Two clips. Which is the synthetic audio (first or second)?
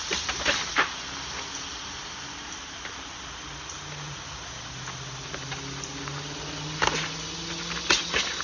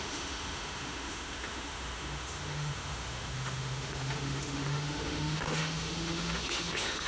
second